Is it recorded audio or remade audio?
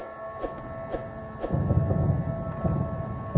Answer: recorded